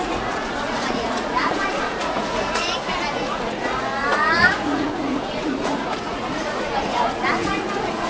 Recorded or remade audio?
remade